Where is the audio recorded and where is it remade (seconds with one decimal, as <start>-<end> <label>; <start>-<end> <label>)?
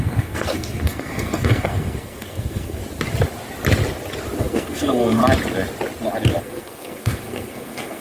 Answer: 0.0-2.8 remade; 2.8-4.4 recorded; 4.4-5.2 remade; 5.2-6.4 recorded; 6.4-8.0 remade